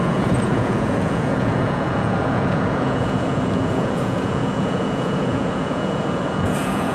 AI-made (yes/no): yes